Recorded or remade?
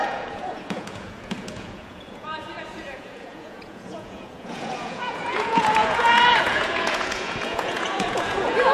remade